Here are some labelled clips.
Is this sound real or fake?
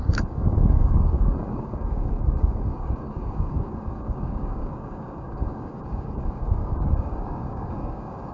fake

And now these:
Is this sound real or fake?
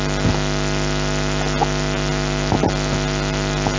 real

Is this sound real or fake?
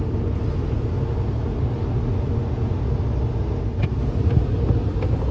real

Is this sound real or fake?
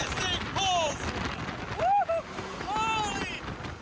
real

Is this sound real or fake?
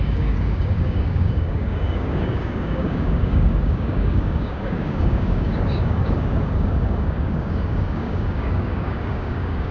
fake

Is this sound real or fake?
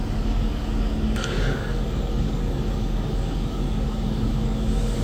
fake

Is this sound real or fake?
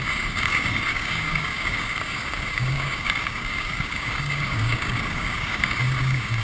fake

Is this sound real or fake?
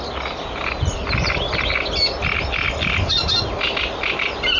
real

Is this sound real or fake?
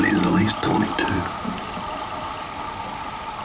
real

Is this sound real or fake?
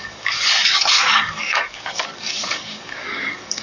fake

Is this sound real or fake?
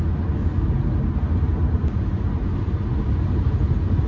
real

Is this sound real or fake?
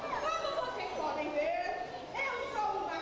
real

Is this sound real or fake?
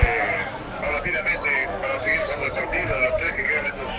fake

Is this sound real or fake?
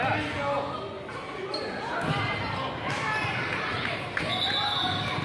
real